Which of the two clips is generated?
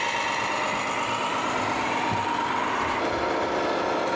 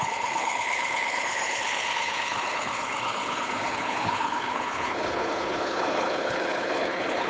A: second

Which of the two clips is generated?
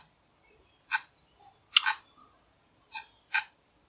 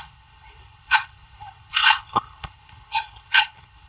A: second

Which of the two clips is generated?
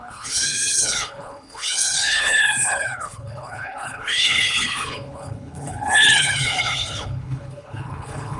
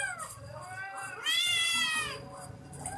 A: first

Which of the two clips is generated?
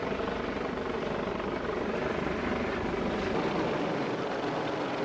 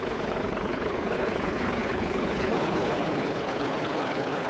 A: second